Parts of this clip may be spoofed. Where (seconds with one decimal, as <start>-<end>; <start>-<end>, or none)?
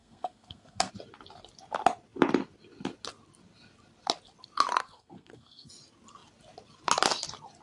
0.0-0.9; 4.8-5.7